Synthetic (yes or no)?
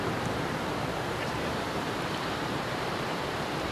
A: yes